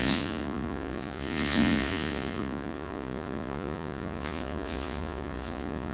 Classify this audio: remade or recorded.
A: remade